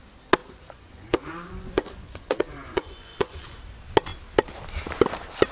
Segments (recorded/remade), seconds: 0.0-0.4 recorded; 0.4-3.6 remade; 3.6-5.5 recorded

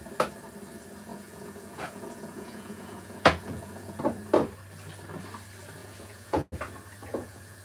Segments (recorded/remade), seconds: 0.0-1.1 recorded; 1.1-4.0 remade; 4.0-5.8 recorded; 5.8-6.5 remade; 6.5-7.0 recorded; 7.0-7.6 remade

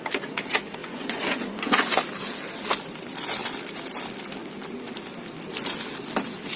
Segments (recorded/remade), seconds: 0.0-0.8 recorded; 0.8-1.9 remade; 1.9-6.6 recorded

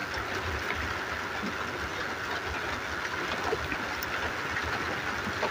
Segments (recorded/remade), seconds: 0.0-5.5 recorded

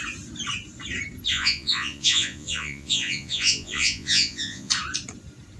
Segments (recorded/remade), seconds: 0.0-1.3 recorded; 1.3-4.7 remade; 4.7-5.6 recorded

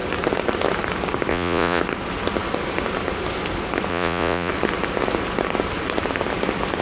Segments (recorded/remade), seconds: 0.0-1.3 recorded; 1.3-1.8 remade; 1.8-3.9 recorded; 3.9-4.5 remade; 4.5-6.8 recorded